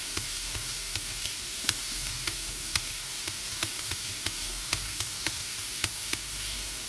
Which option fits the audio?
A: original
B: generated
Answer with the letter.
B